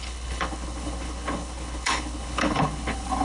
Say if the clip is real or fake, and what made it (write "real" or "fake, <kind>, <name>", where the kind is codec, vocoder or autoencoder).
fake, codec, HILCodec